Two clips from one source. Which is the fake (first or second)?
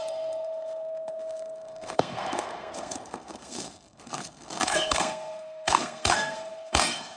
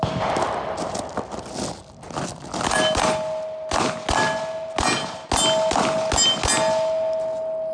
first